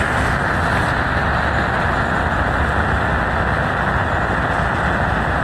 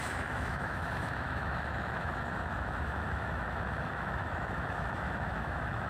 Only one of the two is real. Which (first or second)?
first